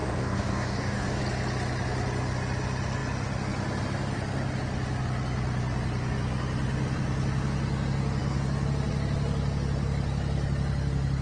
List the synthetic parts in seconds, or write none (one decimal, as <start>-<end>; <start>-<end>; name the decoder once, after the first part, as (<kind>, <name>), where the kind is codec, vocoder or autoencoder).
0.0-1.2 (codec, DAC)